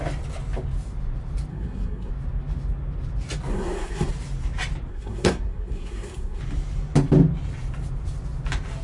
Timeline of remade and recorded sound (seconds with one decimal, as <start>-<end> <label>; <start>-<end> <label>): 0.0-1.5 recorded; 1.5-2.1 remade; 2.1-3.5 recorded; 3.5-4.1 remade; 4.1-4.9 recorded; 4.9-6.4 remade; 6.4-8.8 recorded